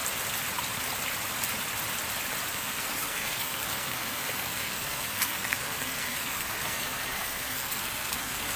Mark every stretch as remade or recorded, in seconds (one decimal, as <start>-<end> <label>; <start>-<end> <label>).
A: 0.0-2.5 recorded; 2.5-8.6 remade